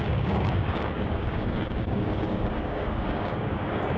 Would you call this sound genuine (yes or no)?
no